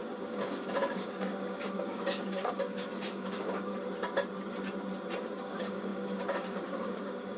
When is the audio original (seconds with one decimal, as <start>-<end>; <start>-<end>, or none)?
3.7-5.2